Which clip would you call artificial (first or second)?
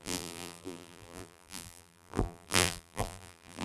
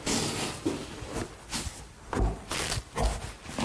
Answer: first